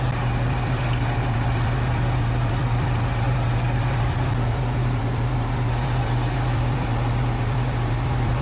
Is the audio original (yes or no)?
no